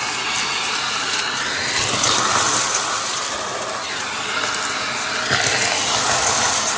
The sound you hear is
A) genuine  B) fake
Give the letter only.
A